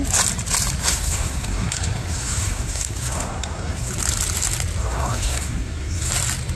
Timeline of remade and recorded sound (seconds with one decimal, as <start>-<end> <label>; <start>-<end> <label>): 0.0-0.8 recorded; 0.8-3.9 remade; 3.9-4.8 recorded; 4.8-6.1 remade; 6.1-6.6 recorded